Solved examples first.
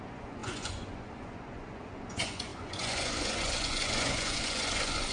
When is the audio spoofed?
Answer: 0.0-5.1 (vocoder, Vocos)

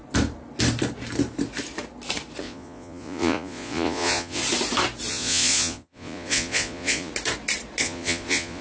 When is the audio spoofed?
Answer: 2.4-4.4 (vocoder, Vocos); 5.1-7.1; 7.8-8.6